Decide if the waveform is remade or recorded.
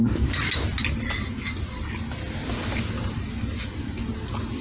recorded